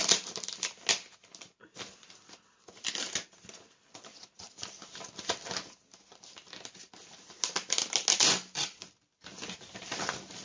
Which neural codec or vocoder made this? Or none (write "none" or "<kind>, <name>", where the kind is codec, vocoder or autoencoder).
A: none